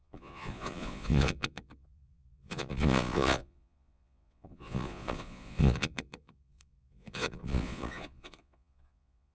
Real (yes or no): no